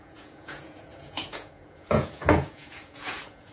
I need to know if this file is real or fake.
fake